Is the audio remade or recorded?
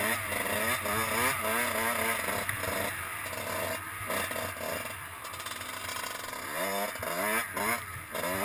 recorded